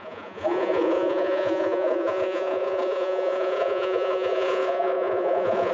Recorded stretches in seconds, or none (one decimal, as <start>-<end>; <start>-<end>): none